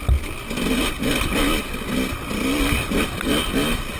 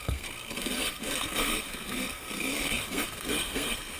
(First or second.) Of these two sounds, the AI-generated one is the second